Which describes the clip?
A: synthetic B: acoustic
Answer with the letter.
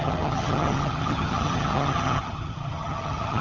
A